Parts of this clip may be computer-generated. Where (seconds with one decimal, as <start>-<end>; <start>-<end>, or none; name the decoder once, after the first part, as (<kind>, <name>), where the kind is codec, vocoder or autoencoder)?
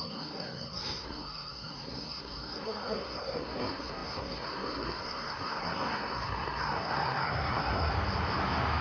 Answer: 0.0-7.9 (codec, SNAC)